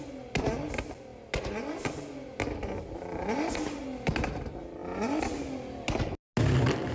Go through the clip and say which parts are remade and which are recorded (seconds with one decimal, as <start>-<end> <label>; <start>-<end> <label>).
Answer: 0.0-6.9 recorded